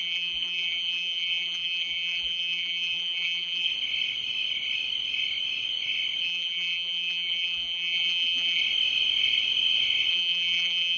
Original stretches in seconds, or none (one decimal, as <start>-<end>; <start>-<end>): 3.7-6.2; 8.6-10.1